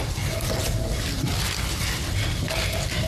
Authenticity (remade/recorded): recorded